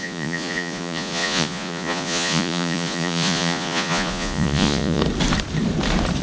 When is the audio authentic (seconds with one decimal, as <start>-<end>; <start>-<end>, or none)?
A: 5.0-6.2